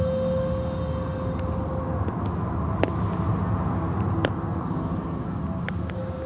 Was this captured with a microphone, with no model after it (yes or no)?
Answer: yes